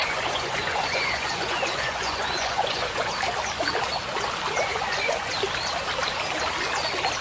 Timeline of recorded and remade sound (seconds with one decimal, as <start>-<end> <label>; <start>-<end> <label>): 0.0-3.1 remade; 3.1-4.7 recorded; 4.7-5.3 remade; 5.3-7.2 recorded